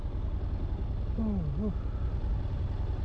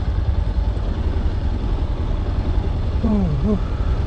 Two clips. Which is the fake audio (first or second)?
second